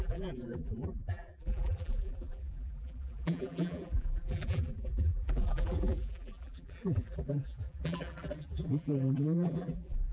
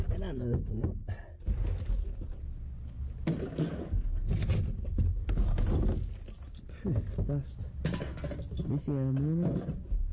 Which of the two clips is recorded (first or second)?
second